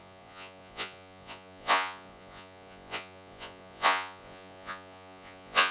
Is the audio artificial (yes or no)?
yes